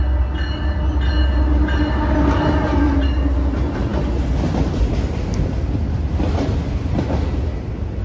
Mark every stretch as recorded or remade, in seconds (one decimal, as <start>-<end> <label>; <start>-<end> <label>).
0.0-8.0 recorded